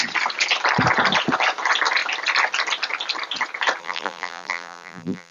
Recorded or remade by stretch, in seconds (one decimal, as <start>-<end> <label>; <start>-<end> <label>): 0.0-3.8 recorded; 3.8-5.3 remade